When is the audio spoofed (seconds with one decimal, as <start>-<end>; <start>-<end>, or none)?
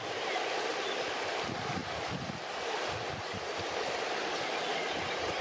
none